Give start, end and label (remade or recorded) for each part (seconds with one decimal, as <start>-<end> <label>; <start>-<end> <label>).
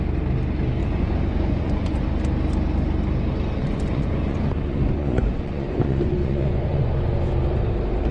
0.0-0.8 recorded; 0.8-2.0 remade; 2.0-3.6 recorded; 3.6-7.3 remade; 7.3-8.1 recorded